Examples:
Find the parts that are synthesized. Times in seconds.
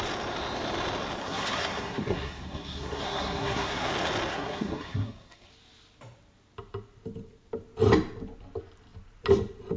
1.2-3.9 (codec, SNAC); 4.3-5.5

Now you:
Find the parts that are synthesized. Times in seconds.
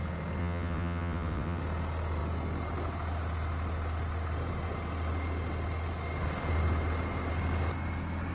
0.4-1.6 (vocoder, WaveNeXt)